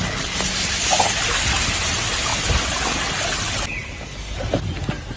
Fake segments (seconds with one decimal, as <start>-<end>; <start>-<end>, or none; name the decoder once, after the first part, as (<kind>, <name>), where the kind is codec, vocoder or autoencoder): none